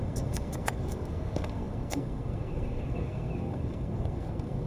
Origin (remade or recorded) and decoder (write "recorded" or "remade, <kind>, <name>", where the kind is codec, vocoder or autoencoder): remade, codec, SNAC